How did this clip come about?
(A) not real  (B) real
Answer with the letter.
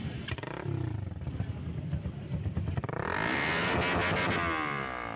B